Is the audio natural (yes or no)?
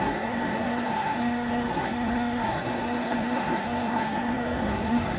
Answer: no